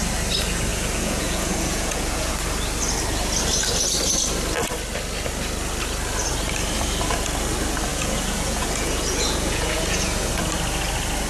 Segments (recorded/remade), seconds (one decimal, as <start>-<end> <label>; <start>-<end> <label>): 0.0-0.7 recorded; 0.7-2.3 remade; 2.3-7.9 recorded; 7.9-10.3 remade; 10.3-11.3 recorded